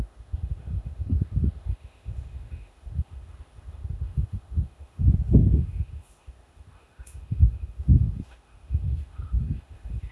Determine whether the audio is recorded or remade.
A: remade